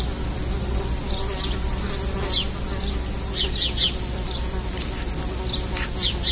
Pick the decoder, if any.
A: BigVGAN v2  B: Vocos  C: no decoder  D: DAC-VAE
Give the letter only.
C